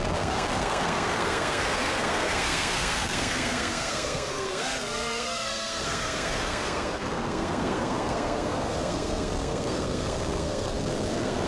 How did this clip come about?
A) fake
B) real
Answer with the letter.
A